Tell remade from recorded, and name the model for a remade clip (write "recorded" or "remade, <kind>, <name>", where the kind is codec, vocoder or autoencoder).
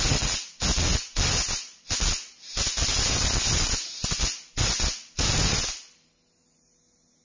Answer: recorded